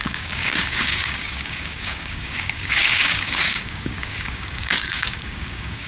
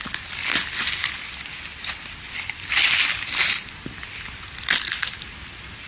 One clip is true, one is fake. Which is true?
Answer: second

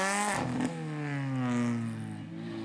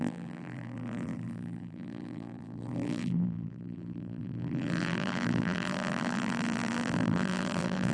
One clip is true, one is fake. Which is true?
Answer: first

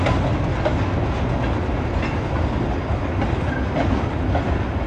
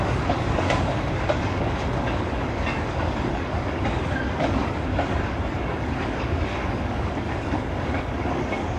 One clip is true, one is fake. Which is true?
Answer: first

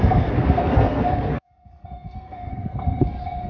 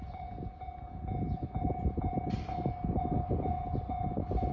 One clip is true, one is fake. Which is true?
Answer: second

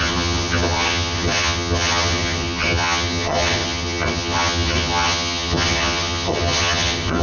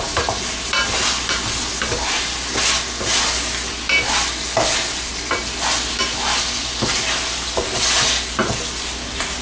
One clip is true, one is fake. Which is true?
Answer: second